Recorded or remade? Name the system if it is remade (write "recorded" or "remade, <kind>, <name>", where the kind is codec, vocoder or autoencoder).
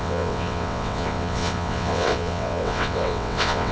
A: remade, vocoder, WaveNeXt